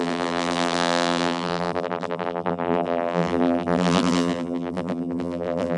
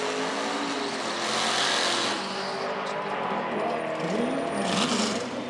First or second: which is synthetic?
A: first